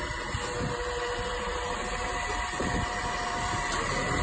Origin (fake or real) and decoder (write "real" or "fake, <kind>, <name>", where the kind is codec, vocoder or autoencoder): fake, vocoder, BigVGAN v2